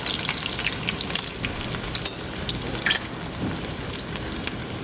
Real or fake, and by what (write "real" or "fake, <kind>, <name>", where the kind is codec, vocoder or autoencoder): real